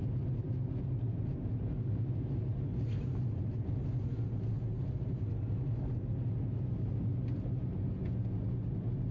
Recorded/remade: recorded